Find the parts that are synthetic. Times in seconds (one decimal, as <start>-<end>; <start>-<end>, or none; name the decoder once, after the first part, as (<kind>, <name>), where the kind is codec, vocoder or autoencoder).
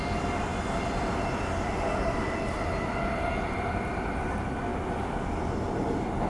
none